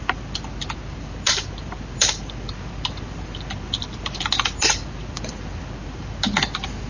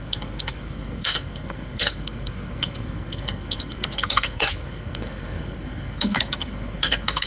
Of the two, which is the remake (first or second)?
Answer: second